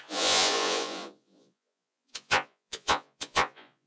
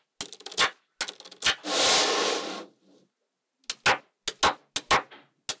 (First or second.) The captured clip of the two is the second